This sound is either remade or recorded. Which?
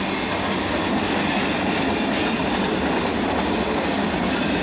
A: recorded